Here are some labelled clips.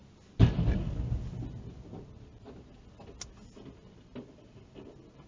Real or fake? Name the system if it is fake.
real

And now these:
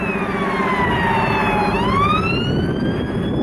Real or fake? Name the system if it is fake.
real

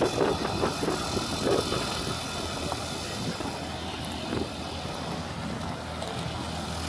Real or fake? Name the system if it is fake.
real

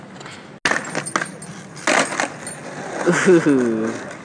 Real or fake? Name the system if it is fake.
real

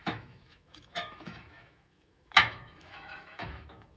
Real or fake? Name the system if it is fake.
fake, autoencoder, DAC-VAE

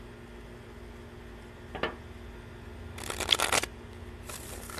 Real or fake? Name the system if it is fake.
real